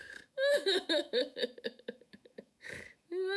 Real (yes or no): no